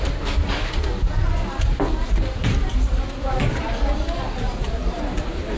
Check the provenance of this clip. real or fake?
real